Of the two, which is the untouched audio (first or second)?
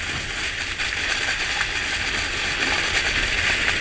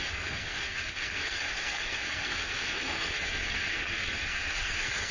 first